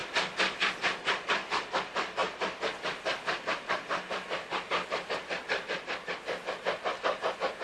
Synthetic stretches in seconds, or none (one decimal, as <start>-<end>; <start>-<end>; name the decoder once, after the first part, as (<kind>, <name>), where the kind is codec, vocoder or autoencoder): 0.0-0.7 (vocoder, BigVGAN v2)